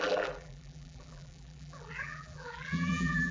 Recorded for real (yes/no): no